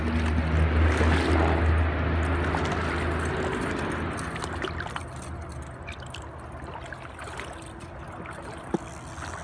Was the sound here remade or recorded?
recorded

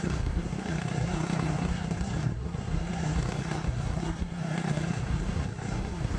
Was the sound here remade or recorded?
remade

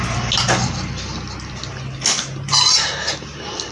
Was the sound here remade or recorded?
recorded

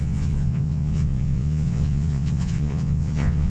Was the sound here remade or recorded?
remade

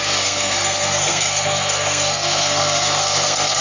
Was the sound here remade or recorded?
remade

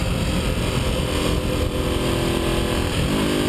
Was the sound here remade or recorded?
recorded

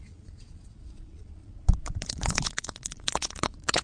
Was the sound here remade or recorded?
remade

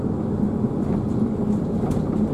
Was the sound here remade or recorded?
recorded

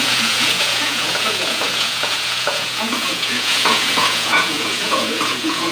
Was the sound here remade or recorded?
remade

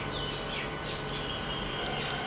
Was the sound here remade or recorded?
remade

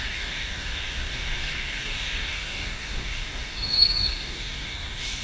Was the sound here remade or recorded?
remade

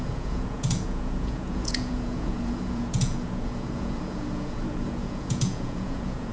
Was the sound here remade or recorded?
remade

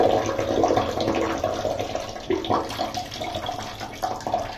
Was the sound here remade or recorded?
recorded